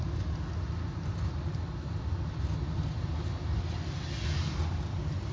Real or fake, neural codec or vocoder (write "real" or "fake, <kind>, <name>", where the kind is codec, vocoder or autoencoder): real